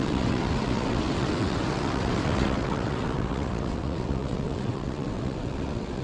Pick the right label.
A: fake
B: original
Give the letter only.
A